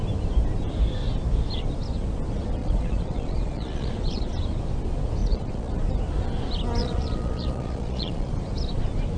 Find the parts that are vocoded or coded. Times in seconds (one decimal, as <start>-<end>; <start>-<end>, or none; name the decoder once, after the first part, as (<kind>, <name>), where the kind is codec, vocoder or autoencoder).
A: 2.6-4.3 (vocoder, Vocos); 5.2-5.7; 6.8-8.3